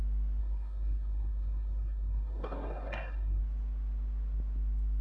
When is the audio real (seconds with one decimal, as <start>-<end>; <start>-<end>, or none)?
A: 0.0-0.4; 3.4-5.0